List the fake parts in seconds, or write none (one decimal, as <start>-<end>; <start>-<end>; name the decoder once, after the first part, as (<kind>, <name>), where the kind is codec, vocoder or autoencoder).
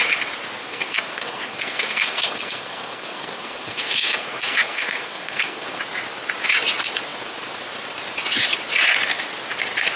0.6-5.8 (codec, SNAC)